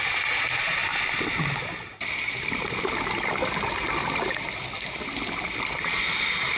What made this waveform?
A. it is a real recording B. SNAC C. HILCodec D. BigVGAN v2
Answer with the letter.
A